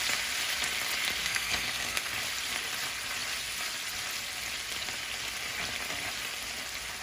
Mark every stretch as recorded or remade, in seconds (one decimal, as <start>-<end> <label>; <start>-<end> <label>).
0.0-1.2 recorded; 1.2-2.1 remade; 2.1-7.0 recorded